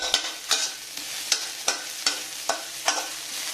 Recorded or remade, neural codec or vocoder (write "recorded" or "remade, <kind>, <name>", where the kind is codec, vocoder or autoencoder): recorded